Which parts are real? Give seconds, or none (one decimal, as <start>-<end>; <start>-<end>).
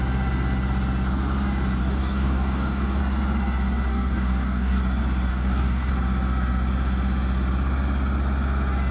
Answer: 0.0-1.8; 3.0-3.9; 4.8-5.3; 5.9-8.9